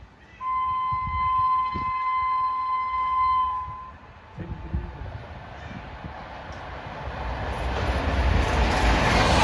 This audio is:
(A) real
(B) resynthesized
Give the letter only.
A